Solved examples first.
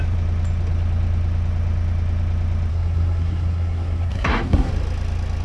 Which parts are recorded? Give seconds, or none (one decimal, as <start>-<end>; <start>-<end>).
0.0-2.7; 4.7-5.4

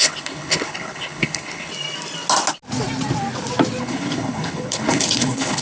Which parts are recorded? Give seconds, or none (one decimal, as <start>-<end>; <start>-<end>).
1.7-3.8

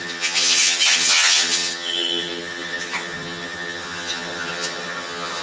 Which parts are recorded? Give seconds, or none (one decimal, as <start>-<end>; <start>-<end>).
none

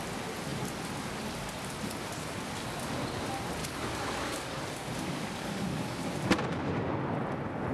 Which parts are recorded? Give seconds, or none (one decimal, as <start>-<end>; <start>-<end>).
0.0-3.6; 6.1-7.7

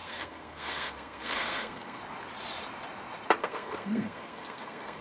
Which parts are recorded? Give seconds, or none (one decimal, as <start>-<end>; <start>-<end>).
2.0-3.4

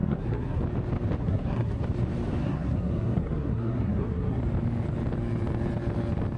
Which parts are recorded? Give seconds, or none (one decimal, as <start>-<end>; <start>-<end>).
0.6-1.2; 1.8-2.4; 4.4-6.4

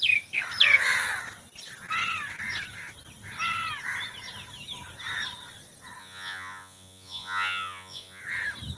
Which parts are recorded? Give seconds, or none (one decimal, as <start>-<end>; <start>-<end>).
0.0-6.0; 8.2-8.8